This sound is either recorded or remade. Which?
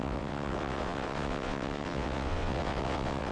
remade